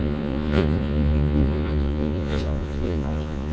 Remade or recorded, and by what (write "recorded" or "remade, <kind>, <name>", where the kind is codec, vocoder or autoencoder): remade, vocoder, Vocos